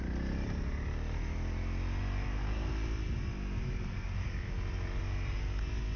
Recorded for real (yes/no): yes